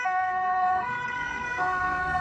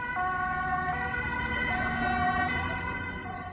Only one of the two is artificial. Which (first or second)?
first